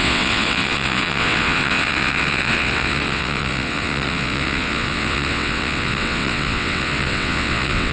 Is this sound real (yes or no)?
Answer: no